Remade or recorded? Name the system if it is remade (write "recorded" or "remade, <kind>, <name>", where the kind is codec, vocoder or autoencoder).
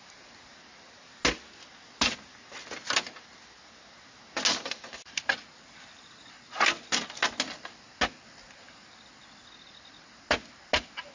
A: recorded